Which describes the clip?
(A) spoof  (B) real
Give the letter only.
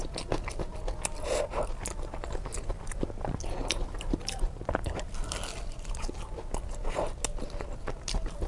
B